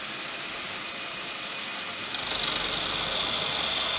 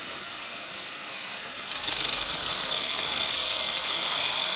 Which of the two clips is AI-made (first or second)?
second